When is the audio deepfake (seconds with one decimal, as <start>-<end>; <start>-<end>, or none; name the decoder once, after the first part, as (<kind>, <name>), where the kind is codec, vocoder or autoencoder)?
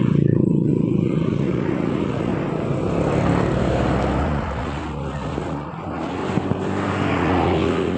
0.0-2.3 (vocoder, Vocos); 4.2-6.2; 7.1-8.0